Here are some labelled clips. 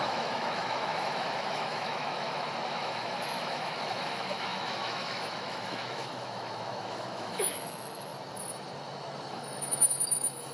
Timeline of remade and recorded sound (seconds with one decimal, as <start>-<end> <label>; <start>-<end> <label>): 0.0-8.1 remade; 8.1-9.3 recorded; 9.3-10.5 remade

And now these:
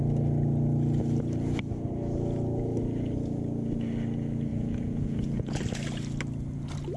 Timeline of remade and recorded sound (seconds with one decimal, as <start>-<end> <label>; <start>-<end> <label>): 0.0-4.5 recorded; 4.5-5.6 remade; 5.6-7.0 recorded

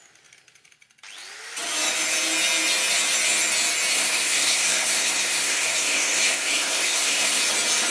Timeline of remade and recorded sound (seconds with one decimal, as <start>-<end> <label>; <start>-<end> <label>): 0.0-3.9 recorded; 3.9-7.4 remade; 7.4-7.9 recorded

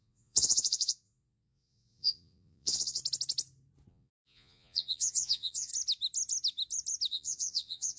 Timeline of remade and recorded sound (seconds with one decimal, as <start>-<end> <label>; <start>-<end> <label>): 0.0-3.0 remade; 3.0-3.9 recorded; 3.9-5.7 remade; 5.7-7.1 recorded; 7.1-8.0 remade

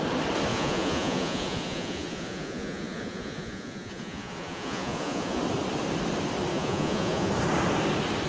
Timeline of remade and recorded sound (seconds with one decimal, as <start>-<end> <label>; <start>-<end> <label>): 0.0-0.5 recorded; 0.5-5.4 remade; 5.4-6.5 recorded; 6.5-7.3 remade; 7.3-8.3 recorded

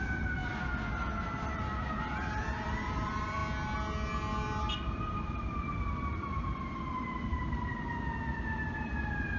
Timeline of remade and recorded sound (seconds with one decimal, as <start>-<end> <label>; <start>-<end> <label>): 0.0-0.4 remade; 0.4-1.0 recorded; 1.0-3.4 remade; 3.4-4.7 recorded; 4.7-9.4 remade